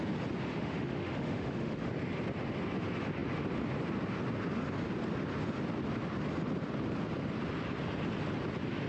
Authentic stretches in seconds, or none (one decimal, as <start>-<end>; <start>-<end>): 0.0-0.5; 1.9-8.9